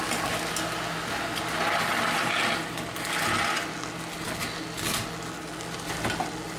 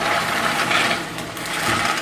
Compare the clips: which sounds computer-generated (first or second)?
second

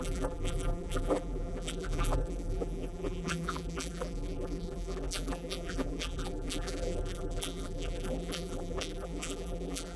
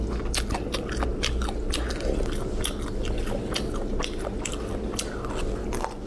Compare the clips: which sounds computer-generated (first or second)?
first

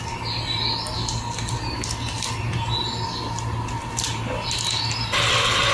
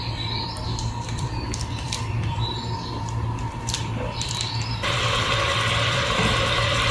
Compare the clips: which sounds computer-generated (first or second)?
second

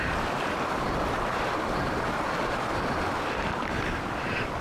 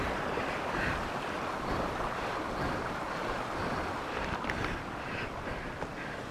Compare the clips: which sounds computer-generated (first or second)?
second